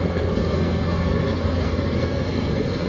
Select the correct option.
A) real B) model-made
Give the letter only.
B